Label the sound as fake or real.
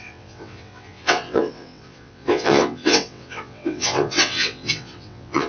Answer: fake